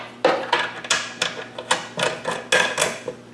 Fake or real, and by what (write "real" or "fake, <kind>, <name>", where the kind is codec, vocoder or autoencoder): real